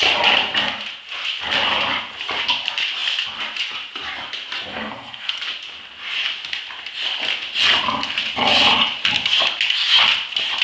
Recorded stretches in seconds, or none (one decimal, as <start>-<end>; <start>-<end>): 0.0-4.7; 5.4-10.6